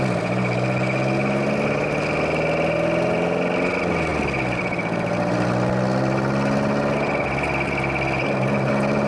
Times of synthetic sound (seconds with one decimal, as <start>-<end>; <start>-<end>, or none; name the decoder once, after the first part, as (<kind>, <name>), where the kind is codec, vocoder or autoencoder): none